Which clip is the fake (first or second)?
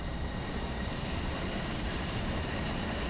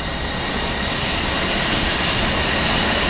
first